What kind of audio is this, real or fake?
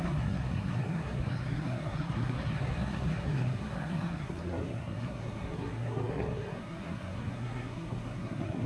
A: fake